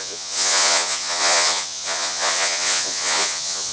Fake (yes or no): yes